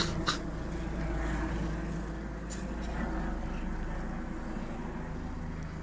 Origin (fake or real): real